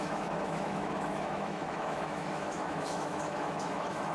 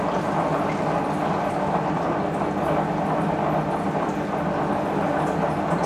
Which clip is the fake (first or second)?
first